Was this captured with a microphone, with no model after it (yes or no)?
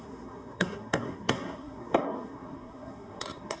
no